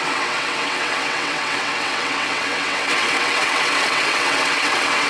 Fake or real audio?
fake